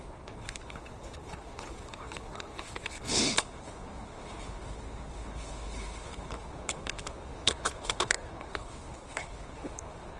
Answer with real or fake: fake